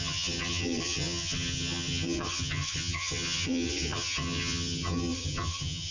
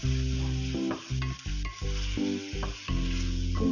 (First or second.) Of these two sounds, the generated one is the first